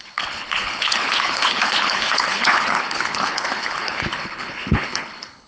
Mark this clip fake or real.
fake